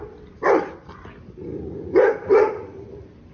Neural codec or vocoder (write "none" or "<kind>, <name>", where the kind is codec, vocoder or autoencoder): vocoder, BigVGAN v2